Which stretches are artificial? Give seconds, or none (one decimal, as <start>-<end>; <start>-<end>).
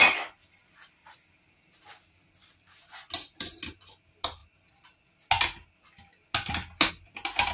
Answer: none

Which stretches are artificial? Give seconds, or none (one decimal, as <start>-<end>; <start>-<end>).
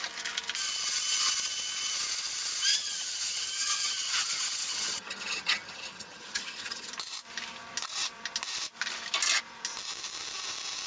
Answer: 2.7-6.9